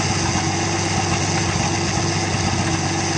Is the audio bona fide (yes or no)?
yes